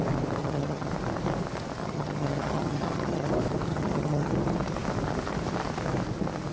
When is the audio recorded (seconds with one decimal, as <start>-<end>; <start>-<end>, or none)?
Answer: 0.0-0.4; 0.9-1.8; 3.3-3.7; 4.3-6.5